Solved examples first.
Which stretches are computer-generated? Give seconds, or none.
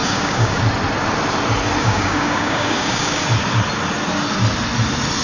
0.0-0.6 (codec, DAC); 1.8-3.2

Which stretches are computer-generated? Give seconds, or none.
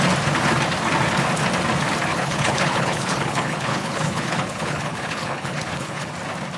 2.1-6.1 (codec, HILCodec)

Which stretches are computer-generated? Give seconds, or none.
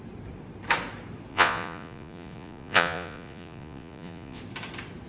1.3-4.4 (vocoder, Vocos)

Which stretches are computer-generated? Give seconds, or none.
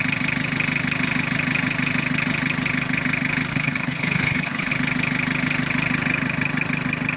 3.5-4.7 (codec, HILCodec)